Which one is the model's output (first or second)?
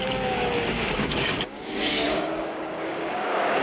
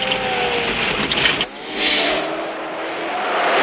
first